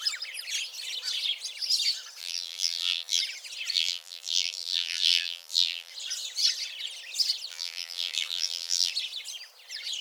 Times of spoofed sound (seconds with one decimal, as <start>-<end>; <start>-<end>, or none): 2.2-3.2; 3.7-5.9; 7.5-8.9